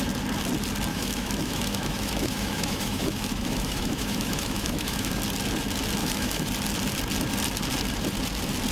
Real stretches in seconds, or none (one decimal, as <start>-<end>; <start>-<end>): 0.0-0.9; 5.1-6.0; 6.5-8.7